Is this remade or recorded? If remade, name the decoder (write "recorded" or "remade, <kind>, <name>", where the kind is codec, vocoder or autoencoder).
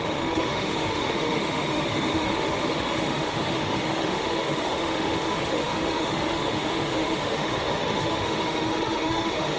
remade, autoencoder, DAC-VAE